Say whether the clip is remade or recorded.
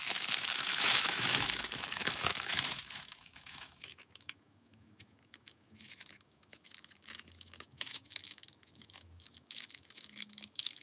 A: remade